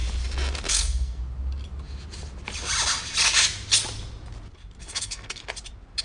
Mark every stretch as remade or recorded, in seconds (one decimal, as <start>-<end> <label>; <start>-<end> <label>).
0.0-0.7 recorded; 0.7-1.2 remade; 1.2-4.8 recorded; 4.8-5.4 remade; 5.4-6.0 recorded